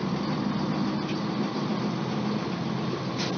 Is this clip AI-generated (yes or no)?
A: no